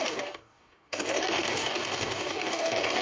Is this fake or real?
fake